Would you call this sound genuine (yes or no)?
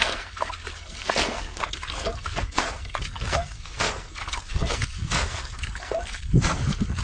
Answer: no